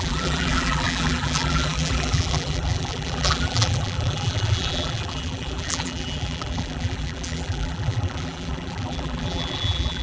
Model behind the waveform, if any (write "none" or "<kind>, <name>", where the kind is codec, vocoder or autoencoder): vocoder, BigVGAN v2